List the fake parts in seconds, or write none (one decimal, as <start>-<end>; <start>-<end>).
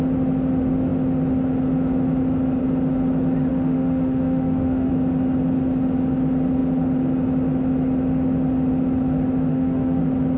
3.5-4.9; 9.5-10.0